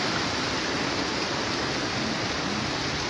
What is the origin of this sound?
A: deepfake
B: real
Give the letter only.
B